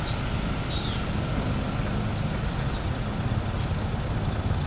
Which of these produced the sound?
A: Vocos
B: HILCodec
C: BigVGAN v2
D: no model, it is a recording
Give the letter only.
D